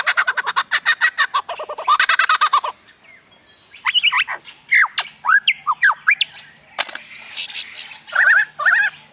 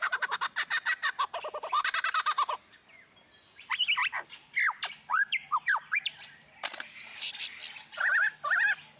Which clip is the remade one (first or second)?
second